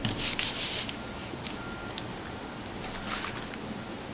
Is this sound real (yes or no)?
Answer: yes